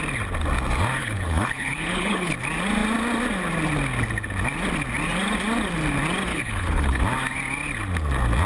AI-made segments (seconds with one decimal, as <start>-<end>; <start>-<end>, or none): 1.0-2.3; 6.3-7.0